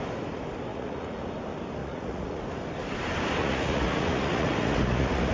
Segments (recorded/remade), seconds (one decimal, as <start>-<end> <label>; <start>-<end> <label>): 0.0-0.7 recorded; 0.7-1.3 remade; 1.3-1.8 recorded; 1.8-2.4 remade; 2.4-3.4 recorded; 3.4-5.3 remade